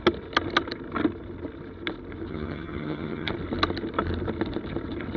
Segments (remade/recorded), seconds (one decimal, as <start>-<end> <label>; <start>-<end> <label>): 0.0-2.3 recorded; 2.3-3.3 remade; 3.3-5.2 recorded